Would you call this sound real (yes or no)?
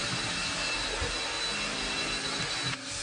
yes